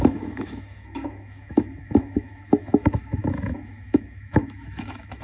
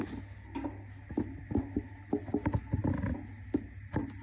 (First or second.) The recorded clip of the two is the second